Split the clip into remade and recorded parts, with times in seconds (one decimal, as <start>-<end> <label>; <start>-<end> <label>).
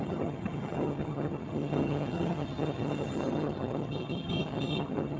0.0-5.2 remade